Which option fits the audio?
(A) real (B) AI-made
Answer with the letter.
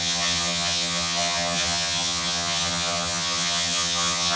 B